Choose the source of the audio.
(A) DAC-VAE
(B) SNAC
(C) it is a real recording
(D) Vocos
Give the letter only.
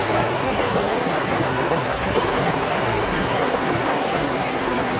B